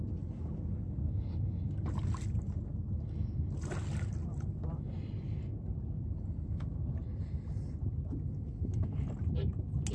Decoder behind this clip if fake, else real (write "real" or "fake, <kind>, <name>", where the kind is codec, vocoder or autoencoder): real